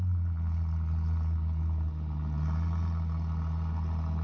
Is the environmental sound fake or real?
real